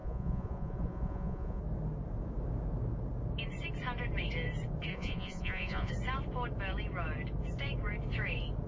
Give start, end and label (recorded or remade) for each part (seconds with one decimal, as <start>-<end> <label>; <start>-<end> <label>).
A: 0.0-1.6 remade; 1.6-4.9 recorded; 4.9-5.9 remade; 5.9-8.7 recorded